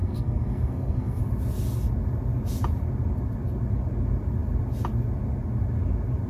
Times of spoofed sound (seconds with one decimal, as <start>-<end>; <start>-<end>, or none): 0.0-1.2